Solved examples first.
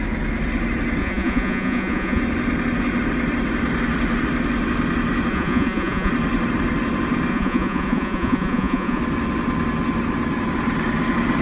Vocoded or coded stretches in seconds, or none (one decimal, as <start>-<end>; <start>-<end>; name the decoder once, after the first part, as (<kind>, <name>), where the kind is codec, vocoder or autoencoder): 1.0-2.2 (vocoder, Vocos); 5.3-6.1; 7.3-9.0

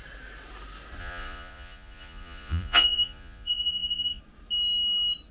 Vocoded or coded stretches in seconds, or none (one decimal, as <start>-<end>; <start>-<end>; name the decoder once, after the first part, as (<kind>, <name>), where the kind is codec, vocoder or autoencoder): 1.0-4.2 (vocoder, Vocos)

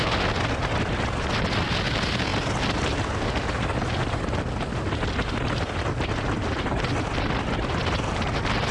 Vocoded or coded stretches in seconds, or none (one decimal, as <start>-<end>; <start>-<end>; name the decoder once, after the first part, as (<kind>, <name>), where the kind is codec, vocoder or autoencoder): none

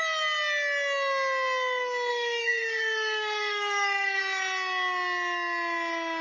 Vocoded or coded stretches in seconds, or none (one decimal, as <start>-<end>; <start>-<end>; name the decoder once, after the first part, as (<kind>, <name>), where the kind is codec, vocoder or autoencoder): 2.1-4.2 (codec, SNAC)